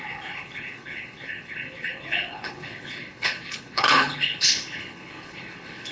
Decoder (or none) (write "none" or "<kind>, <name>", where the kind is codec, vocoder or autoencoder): codec, HILCodec